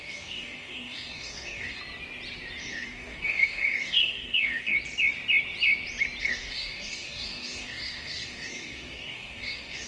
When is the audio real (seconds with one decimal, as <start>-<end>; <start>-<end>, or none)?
1.8-2.6; 4.7-6.2